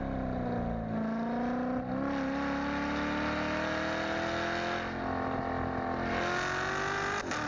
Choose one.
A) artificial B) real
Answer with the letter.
B